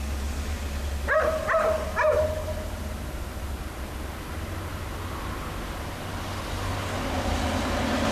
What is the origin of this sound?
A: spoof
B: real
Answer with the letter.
B